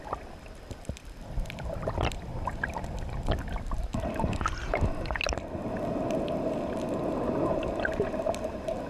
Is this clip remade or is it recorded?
recorded